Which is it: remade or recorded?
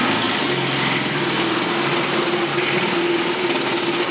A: recorded